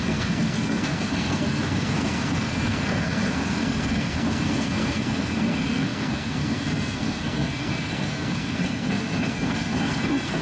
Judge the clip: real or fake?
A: fake